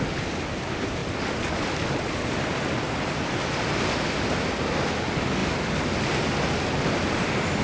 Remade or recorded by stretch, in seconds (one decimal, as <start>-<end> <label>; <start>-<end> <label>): 0.0-7.6 recorded

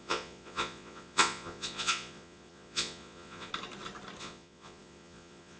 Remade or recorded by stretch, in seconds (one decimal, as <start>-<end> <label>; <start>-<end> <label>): 0.0-3.5 remade; 3.5-4.2 recorded; 4.2-5.6 remade

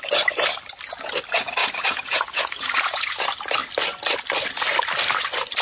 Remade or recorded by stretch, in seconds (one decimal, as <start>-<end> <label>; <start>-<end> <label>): 0.0-1.6 recorded; 1.6-3.2 remade; 3.2-5.6 recorded

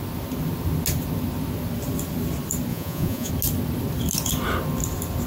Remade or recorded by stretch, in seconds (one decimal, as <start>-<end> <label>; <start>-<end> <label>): 0.0-2.7 recorded; 2.7-3.3 remade; 3.3-5.3 recorded

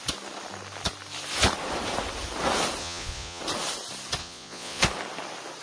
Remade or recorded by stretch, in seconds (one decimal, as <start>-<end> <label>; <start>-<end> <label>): 0.0-2.8 recorded; 2.8-3.4 remade; 3.4-4.2 recorded; 4.2-4.8 remade; 4.8-5.6 recorded

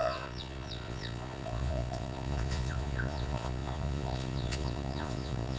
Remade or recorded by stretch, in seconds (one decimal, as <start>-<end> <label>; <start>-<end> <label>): 0.0-5.6 remade

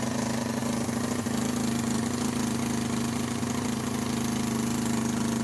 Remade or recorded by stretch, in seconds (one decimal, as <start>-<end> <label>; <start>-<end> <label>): 0.0-5.4 recorded

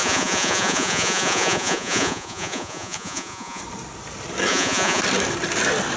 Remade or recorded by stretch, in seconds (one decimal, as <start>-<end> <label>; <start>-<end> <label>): 0.0-3.6 remade; 3.6-4.5 recorded; 4.5-5.0 remade; 5.0-6.0 recorded